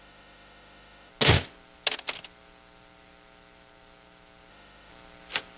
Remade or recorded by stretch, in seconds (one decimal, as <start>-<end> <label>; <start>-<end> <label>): 0.0-1.1 remade; 1.1-4.5 recorded; 4.5-4.9 remade; 4.9-5.6 recorded